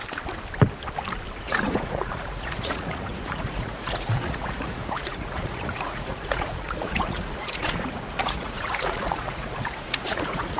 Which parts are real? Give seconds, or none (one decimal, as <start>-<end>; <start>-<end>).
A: 0.0-1.4